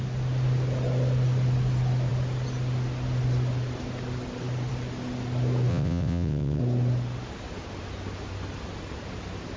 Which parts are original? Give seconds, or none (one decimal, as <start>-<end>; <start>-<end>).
0.0-5.7; 6.6-9.6

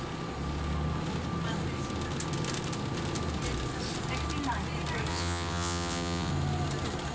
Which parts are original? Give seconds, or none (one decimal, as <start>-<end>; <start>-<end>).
0.0-5.1; 6.3-7.1

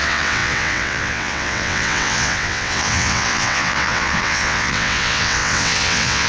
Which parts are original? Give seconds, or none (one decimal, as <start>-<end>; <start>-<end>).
none

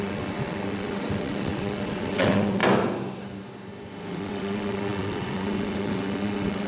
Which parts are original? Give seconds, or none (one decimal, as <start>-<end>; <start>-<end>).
2.6-4.1

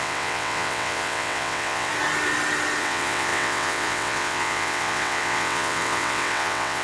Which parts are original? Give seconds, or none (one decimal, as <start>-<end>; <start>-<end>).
1.9-2.8

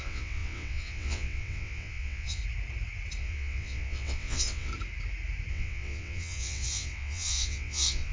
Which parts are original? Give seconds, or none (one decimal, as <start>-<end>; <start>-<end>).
2.4-3.2; 4.7-5.5